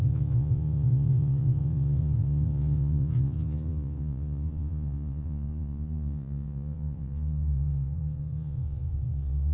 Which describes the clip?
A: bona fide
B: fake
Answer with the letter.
B